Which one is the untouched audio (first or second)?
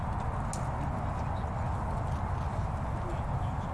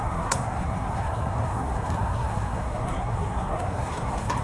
first